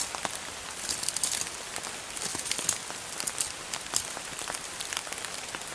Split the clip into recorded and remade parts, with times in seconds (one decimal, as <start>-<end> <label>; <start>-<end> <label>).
0.0-5.7 recorded